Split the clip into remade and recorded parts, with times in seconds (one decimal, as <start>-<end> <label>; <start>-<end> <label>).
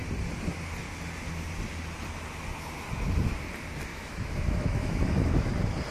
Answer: 0.0-3.9 recorded; 3.9-5.5 remade; 5.5-5.9 recorded